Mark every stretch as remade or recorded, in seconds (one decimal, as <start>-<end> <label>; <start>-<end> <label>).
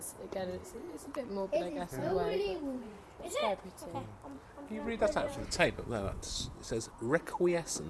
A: 0.0-3.4 remade; 3.4-5.0 recorded; 5.0-7.9 remade